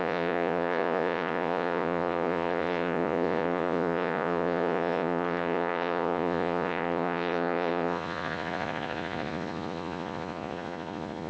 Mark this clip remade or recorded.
remade